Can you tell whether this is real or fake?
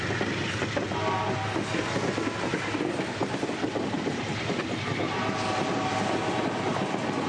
real